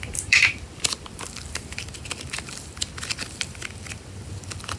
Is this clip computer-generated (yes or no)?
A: yes